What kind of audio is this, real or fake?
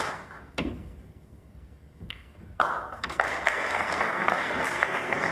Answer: fake